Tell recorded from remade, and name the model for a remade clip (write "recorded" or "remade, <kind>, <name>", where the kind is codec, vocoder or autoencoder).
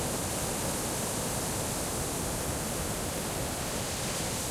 recorded